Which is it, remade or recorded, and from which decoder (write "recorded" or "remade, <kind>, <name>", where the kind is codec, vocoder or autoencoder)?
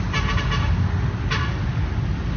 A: recorded